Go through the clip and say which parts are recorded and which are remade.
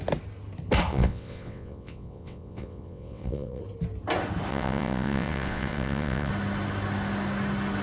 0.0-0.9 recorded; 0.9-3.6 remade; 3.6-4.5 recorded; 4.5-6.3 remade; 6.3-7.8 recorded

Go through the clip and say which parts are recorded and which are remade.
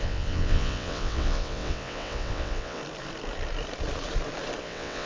0.0-2.8 remade; 2.8-4.6 recorded; 4.6-5.1 remade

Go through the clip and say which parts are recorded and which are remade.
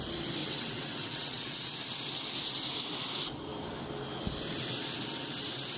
0.0-0.4 recorded; 0.4-1.8 remade; 1.8-5.8 recorded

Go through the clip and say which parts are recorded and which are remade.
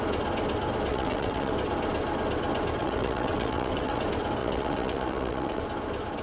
0.0-0.9 recorded; 0.9-1.5 remade; 1.5-2.8 recorded; 2.8-4.0 remade; 4.0-4.4 recorded; 4.4-5.6 remade; 5.6-6.2 recorded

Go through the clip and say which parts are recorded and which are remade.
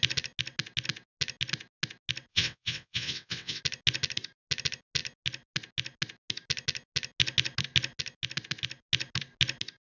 0.0-2.3 recorded; 2.3-3.6 remade; 3.6-9.8 recorded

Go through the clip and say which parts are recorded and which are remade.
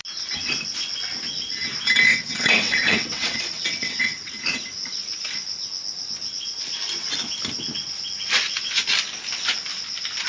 0.0-2.1 recorded; 2.1-4.3 remade; 4.3-10.3 recorded